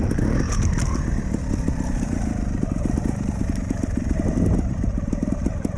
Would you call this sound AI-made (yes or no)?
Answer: no